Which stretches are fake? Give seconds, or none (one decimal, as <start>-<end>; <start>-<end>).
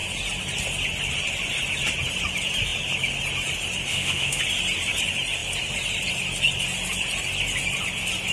3.9-4.4